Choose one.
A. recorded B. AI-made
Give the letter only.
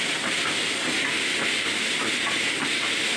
A